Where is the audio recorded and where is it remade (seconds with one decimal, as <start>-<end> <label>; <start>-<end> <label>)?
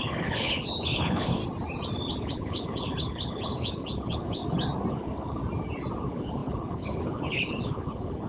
0.0-1.4 remade; 1.4-2.2 recorded; 2.2-4.4 remade; 4.4-4.9 recorded; 4.9-5.4 remade; 5.4-6.0 recorded; 6.0-8.3 remade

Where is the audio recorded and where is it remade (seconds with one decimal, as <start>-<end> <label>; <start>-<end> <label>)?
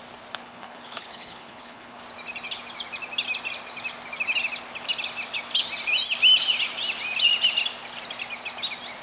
0.0-0.4 recorded; 0.4-2.0 remade; 2.0-9.0 recorded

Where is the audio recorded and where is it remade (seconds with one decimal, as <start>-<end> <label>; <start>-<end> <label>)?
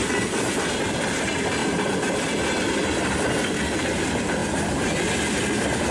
0.0-5.9 recorded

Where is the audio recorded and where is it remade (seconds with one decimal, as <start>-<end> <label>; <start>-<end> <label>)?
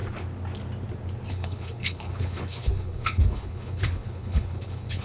0.0-1.3 recorded; 1.3-5.0 remade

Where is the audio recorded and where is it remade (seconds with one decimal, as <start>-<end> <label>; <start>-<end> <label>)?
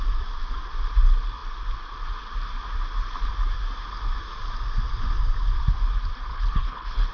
0.0-6.3 recorded; 6.3-7.1 remade